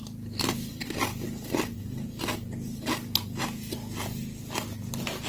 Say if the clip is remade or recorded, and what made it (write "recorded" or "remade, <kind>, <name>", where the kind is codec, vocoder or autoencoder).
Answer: recorded